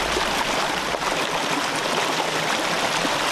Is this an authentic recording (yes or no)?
yes